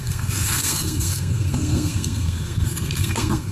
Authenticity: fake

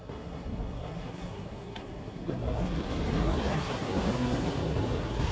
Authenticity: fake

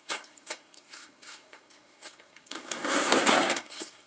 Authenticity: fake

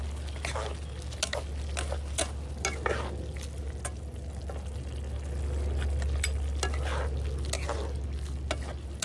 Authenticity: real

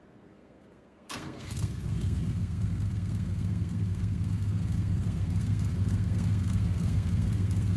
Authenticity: fake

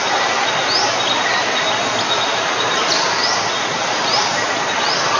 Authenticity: real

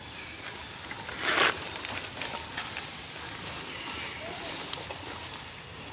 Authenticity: real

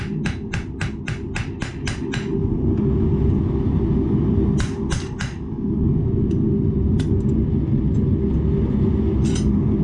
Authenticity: real